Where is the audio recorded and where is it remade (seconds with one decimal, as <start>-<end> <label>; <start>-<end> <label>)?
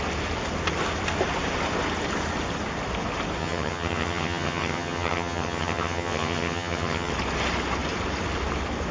0.0-3.4 recorded; 3.4-7.1 remade; 7.1-8.9 recorded